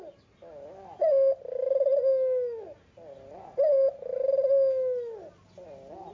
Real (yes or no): yes